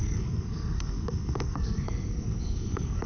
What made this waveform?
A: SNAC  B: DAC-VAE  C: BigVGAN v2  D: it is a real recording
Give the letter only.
A